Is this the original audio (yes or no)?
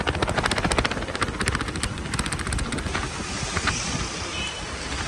yes